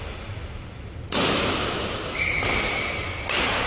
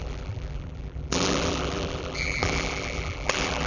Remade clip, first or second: second